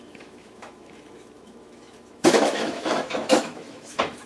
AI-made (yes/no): yes